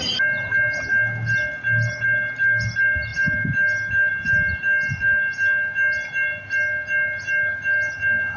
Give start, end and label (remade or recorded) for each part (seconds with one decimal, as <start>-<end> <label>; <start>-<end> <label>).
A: 0.0-8.4 recorded

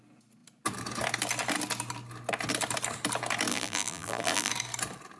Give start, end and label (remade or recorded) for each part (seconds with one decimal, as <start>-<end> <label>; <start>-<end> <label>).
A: 0.0-3.5 recorded; 3.5-4.5 remade; 4.5-5.2 recorded

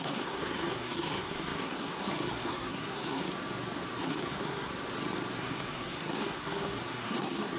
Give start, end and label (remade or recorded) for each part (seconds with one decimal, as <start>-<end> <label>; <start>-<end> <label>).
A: 0.0-3.2 remade; 3.2-4.0 recorded; 4.0-4.7 remade; 4.7-5.4 recorded; 5.4-7.6 remade

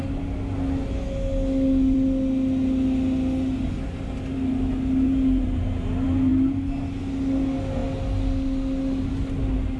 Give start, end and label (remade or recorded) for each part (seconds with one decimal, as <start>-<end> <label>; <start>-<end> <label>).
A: 0.0-9.8 recorded

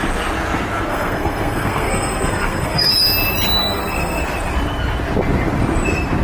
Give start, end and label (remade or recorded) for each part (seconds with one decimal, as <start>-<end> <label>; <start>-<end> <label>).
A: 0.0-0.9 recorded; 0.9-2.9 remade; 2.9-3.6 recorded; 3.6-4.2 remade; 4.2-6.2 recorded

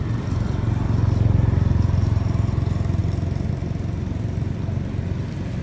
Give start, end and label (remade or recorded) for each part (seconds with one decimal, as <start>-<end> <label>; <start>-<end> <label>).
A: 0.0-5.6 recorded

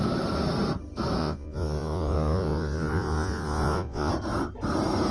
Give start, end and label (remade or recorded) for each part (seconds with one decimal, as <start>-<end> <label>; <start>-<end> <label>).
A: 0.0-1.2 recorded; 1.2-4.1 remade; 4.1-5.1 recorded